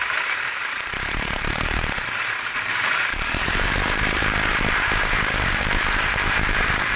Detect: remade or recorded remade